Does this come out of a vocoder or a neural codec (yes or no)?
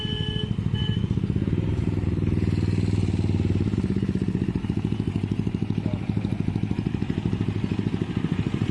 no